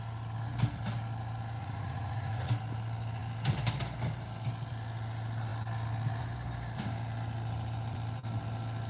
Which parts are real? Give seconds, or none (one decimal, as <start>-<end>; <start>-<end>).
0.0-1.6; 2.5-8.9